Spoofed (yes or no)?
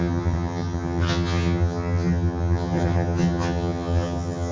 yes